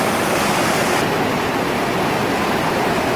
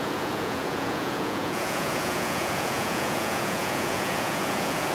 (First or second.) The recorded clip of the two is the first